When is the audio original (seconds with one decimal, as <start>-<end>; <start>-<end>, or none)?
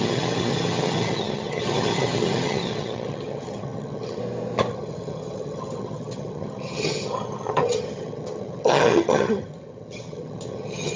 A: 4.2-4.7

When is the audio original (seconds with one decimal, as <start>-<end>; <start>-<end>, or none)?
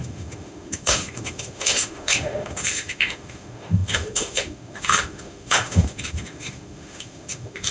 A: none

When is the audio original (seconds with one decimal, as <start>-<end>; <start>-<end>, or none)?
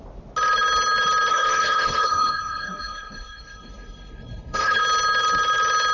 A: 0.0-1.3; 4.8-5.9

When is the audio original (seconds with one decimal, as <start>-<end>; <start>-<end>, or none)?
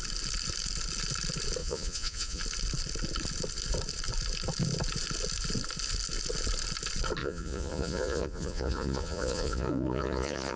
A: 0.0-1.6; 2.4-7.2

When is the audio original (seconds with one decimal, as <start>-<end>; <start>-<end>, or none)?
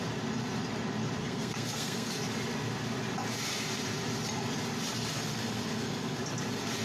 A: 0.0-1.2; 2.2-5.2; 6.2-6.8